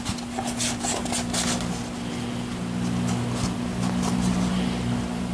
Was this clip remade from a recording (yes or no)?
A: no